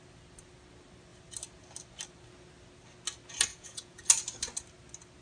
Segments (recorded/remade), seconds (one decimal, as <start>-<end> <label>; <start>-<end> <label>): 0.0-3.5 recorded; 3.5-4.0 remade; 4.0-5.2 recorded